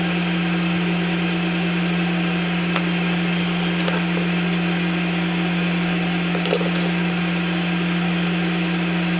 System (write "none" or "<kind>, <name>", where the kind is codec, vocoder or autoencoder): none